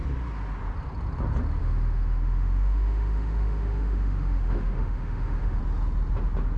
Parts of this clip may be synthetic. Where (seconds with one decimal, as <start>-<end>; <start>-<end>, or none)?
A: 1.6-5.6